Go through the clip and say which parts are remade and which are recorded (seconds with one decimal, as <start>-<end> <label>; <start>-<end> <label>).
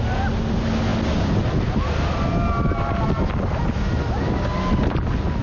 0.0-5.4 recorded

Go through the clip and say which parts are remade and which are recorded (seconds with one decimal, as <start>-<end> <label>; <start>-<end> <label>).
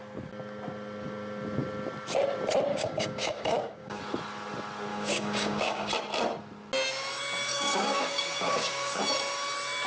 0.0-2.7 recorded; 2.7-4.0 remade; 4.0-4.9 recorded; 4.9-5.9 remade; 5.9-7.5 recorded; 7.5-9.0 remade; 9.0-9.9 recorded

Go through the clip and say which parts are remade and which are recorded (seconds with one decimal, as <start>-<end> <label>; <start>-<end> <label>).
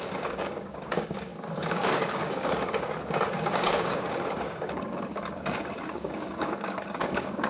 0.0-7.5 remade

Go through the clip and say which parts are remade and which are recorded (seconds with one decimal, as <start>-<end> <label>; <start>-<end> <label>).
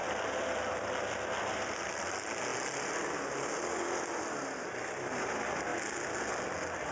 0.0-6.9 recorded